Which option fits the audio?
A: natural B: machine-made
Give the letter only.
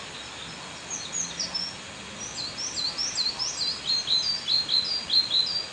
A